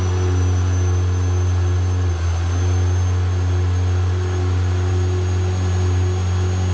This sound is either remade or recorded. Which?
recorded